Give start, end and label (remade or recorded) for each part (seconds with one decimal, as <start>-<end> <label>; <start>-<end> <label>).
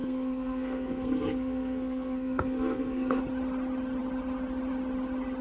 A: 0.0-3.2 remade; 3.2-5.4 recorded